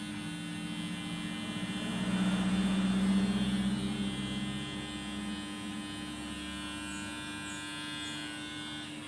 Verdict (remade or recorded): recorded